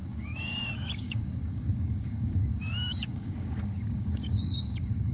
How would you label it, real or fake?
fake